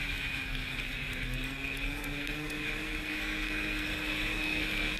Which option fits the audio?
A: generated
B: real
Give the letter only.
A